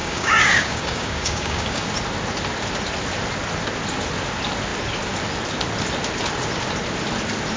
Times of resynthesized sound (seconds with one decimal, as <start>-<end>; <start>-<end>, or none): 0.0-1.9